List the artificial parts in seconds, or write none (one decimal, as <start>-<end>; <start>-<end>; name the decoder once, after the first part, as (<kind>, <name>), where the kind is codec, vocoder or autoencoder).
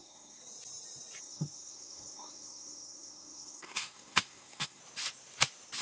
0.0-0.4 (codec, SNAC); 1.2-4.8